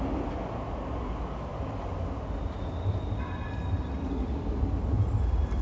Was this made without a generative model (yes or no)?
yes